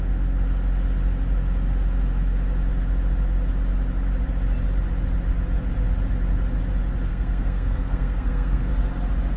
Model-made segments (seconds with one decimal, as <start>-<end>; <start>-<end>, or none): 7.1-8.7